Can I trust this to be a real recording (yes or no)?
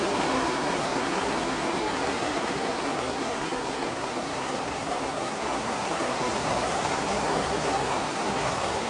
no